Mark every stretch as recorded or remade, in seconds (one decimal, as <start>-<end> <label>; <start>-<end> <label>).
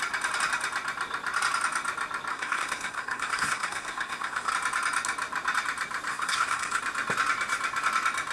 0.0-2.3 recorded; 2.3-4.5 remade; 4.5-6.1 recorded; 6.1-6.8 remade; 6.8-8.3 recorded